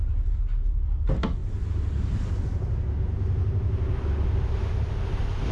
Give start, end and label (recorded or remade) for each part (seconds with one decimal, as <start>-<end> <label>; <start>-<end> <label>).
0.0-5.5 recorded